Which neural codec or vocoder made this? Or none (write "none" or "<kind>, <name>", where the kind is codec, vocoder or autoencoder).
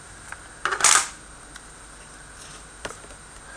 none